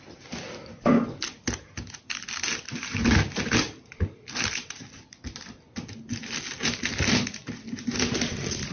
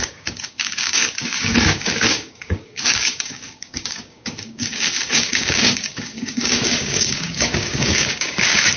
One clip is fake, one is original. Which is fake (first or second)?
second